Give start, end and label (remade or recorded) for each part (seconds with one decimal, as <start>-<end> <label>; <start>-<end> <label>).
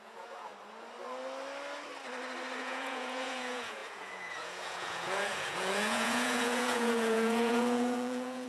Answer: 0.0-0.5 remade; 0.5-2.6 recorded; 2.6-8.5 remade